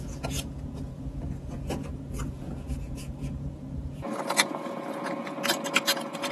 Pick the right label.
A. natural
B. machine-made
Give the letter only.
B